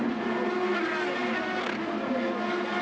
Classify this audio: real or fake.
real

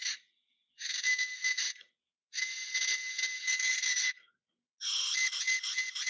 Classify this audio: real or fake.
real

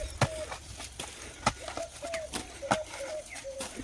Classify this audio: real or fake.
real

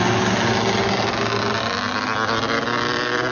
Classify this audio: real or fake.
real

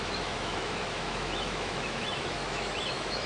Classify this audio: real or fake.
fake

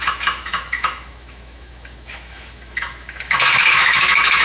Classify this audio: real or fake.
fake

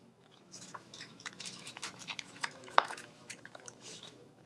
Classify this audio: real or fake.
fake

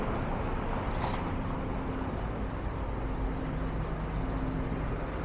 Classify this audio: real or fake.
real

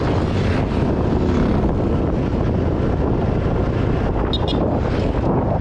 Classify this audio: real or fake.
real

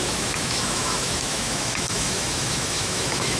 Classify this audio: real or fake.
fake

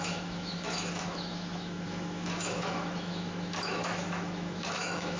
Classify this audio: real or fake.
fake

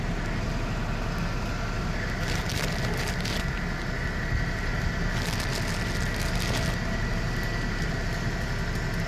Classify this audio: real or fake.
real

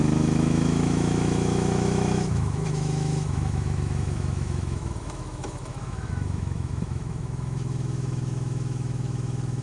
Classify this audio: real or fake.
fake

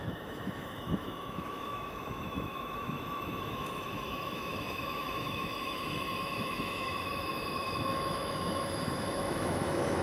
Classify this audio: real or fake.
fake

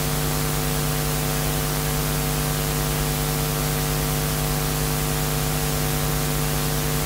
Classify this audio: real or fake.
real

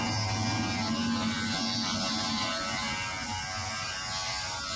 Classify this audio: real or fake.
real